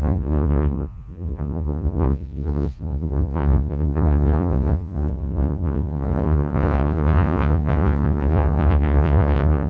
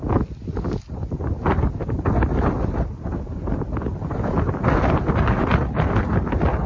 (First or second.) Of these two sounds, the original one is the second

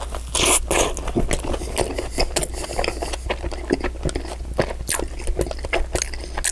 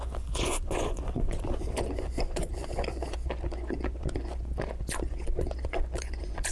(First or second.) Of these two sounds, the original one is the first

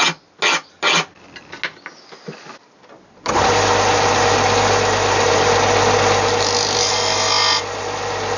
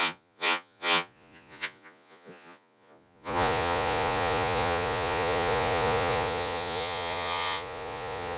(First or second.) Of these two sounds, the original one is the first